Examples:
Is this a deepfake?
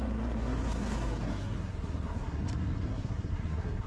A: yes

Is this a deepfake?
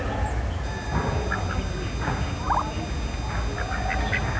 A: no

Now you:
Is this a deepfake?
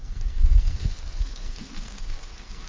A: yes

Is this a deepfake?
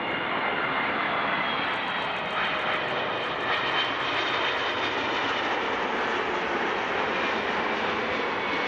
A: no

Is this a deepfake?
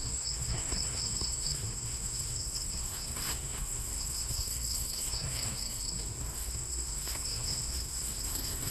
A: yes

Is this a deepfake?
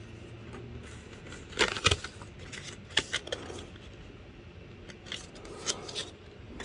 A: no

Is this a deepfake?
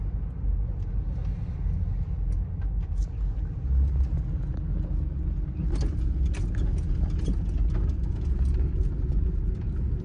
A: no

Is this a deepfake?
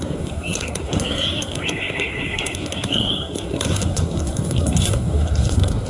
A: yes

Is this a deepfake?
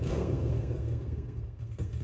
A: yes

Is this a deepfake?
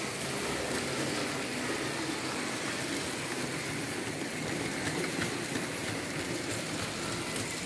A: no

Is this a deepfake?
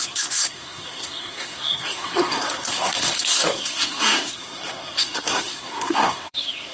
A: yes